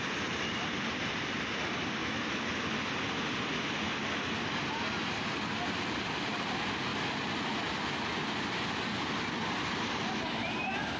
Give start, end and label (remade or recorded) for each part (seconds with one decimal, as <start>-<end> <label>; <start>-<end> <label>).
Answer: 0.0-2.0 recorded; 2.0-2.5 remade; 2.5-11.0 recorded